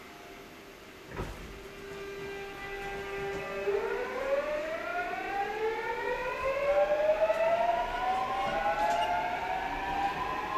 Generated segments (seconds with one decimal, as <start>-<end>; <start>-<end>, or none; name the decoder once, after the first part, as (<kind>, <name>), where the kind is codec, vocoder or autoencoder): none